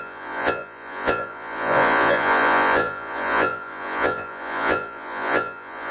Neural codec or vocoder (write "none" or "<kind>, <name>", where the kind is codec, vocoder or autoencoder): vocoder, Vocos